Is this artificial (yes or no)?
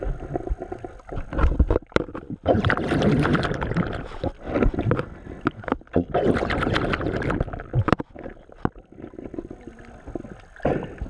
no